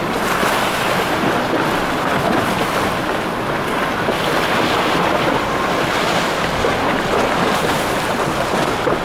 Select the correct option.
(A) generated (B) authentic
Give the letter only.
B